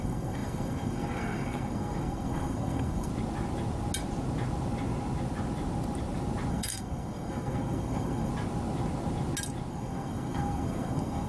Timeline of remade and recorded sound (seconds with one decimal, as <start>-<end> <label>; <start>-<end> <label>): 0.0-3.1 remade; 3.1-6.5 recorded; 6.5-8.3 remade; 8.3-9.7 recorded; 9.7-11.3 remade